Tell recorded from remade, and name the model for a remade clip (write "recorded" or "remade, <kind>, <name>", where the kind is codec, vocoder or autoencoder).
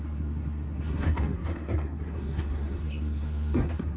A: remade, codec, SNAC